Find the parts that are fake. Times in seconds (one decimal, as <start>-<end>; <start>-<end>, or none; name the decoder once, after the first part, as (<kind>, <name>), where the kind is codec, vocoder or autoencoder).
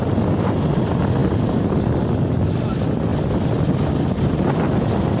none